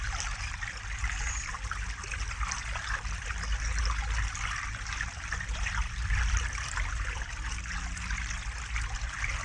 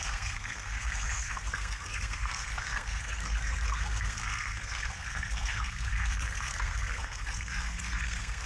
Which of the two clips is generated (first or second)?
second